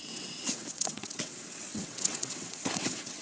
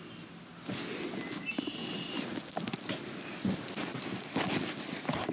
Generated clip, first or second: first